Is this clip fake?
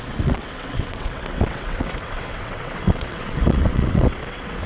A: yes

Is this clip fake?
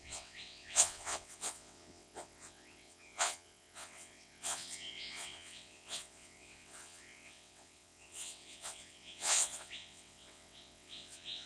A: yes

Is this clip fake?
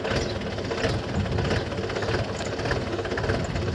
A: no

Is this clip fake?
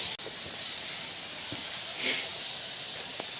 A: no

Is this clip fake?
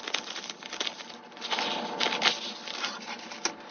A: no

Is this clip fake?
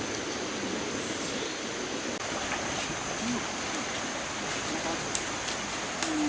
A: no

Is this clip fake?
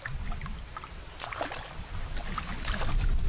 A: no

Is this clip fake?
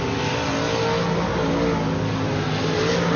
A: no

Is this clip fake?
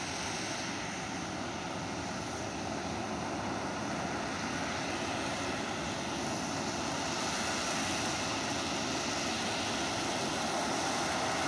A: no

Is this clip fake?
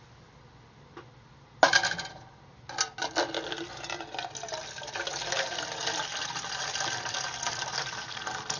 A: no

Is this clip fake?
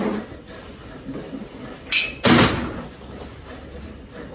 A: no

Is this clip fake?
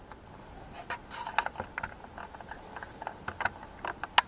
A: no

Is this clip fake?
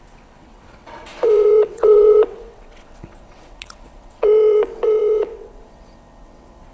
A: yes